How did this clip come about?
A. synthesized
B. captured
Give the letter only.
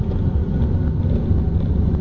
B